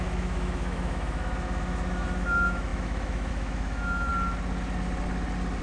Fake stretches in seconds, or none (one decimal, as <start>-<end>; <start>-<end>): 0.0-4.1